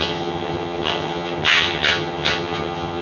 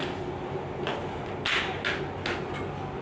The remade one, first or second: first